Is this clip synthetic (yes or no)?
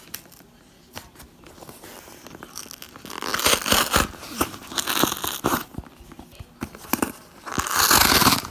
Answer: no